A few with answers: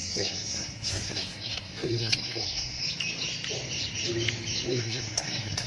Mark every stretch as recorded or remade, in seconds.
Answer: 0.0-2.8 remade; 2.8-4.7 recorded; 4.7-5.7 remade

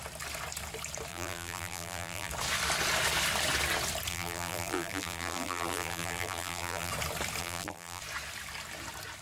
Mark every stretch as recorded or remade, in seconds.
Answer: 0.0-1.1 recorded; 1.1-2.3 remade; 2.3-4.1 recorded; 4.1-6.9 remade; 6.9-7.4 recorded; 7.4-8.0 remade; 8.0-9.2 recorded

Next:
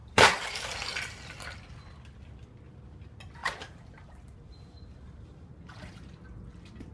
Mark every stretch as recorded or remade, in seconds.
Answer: 0.0-0.5 remade; 0.5-3.4 recorded; 3.4-5.8 remade; 5.8-6.9 recorded

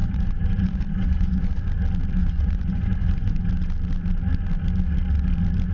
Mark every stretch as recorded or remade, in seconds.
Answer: 0.0-1.6 remade; 1.6-2.2 recorded; 2.2-3.5 remade; 3.5-5.7 recorded